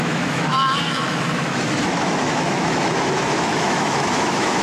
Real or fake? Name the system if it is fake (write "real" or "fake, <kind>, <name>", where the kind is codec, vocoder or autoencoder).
fake, autoencoder, DAC-VAE